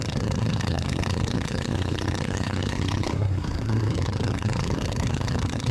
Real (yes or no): no